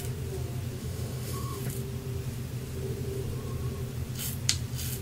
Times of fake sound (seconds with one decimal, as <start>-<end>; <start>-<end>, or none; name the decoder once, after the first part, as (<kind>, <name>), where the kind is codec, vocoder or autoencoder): 0.8-1.6 (autoencoder, DAC-VAE)